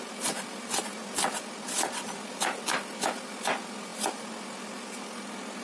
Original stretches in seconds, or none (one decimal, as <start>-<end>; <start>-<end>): 0.0-5.6